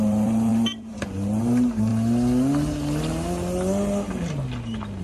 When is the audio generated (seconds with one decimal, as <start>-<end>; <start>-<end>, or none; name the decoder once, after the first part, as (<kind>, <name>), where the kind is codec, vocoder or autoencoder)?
0.0-1.9 (vocoder, BigVGAN v2)